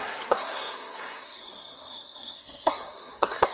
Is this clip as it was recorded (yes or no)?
no